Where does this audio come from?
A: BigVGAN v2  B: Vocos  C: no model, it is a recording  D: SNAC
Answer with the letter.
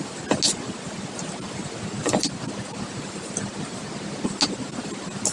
C